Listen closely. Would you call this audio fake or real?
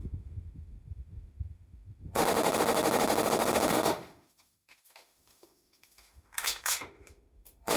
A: fake